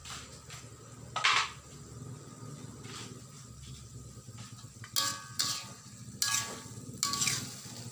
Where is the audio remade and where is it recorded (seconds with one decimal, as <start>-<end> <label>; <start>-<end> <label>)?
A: 0.0-7.9 recorded